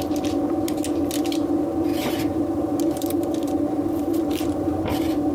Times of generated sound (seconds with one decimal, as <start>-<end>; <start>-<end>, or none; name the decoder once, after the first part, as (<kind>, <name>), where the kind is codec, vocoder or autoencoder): 1.9-5.3 (vocoder, BigVGAN v2)